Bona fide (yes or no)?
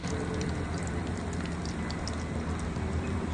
no